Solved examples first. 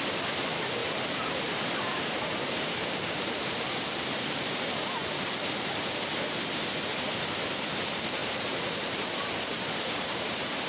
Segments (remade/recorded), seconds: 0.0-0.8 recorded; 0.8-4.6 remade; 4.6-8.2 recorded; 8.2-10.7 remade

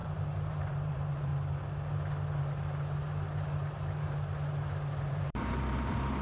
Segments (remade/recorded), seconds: 0.0-1.3 remade; 1.3-5.0 recorded; 5.0-6.2 remade

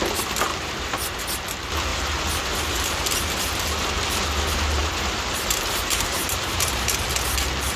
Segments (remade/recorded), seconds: 0.0-0.5 recorded; 0.5-1.2 remade; 1.2-1.9 recorded; 1.9-3.2 remade; 3.2-4.8 recorded; 4.8-7.0 remade; 7.0-7.8 recorded

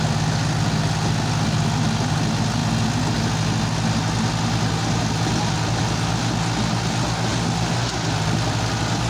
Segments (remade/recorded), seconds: 0.0-9.1 recorded

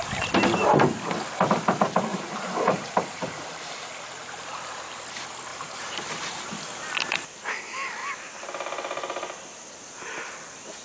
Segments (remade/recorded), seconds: 0.0-2.1 recorded; 2.1-3.7 remade; 3.7-5.5 recorded; 5.5-6.3 remade; 6.3-10.8 recorded

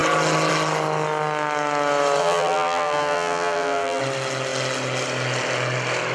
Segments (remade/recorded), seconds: 0.0-2.2 recorded; 2.2-4.0 remade; 4.0-6.1 recorded

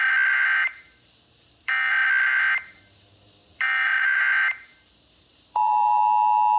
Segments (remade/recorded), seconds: 0.0-0.6 recorded; 0.6-1.9 remade; 1.9-3.4 recorded; 3.4-4.2 remade; 4.2-5.3 recorded; 5.3-6.0 remade; 6.0-6.6 recorded

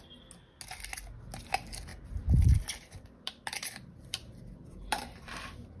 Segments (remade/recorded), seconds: 0.0-1.9 recorded; 1.9-5.8 remade